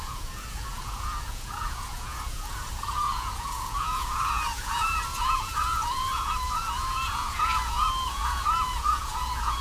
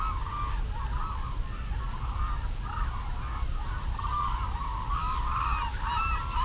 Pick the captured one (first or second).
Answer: second